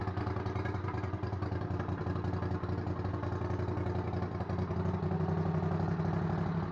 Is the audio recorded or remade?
recorded